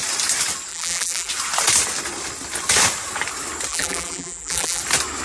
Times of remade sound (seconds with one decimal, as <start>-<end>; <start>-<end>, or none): 0.7-1.3; 3.7-4.8